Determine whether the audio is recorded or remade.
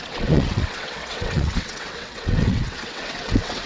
remade